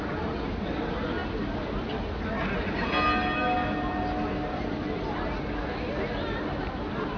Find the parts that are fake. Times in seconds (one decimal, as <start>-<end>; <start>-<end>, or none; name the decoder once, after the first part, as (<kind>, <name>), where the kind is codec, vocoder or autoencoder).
none